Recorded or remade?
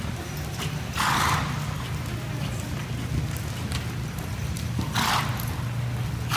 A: recorded